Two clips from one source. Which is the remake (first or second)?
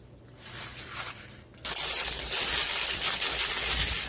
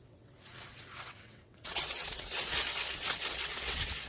second